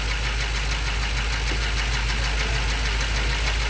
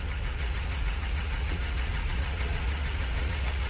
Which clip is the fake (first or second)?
second